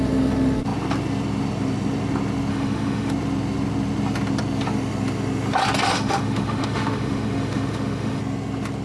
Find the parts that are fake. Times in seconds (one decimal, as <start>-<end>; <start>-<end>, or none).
2.5-3.1; 5.9-8.2